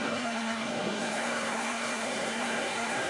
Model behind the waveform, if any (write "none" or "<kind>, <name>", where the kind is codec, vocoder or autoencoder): codec, SNAC